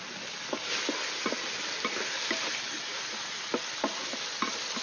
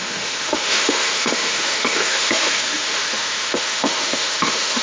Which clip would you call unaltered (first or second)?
first